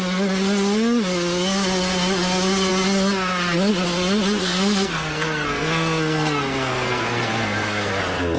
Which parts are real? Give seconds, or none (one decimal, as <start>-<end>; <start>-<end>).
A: 0.0-4.4; 7.9-8.4